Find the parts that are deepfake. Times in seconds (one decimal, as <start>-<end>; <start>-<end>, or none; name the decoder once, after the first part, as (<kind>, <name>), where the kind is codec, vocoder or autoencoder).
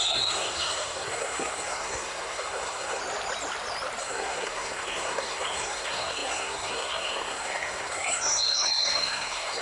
0.0-3.0 (codec, SNAC); 4.0-9.6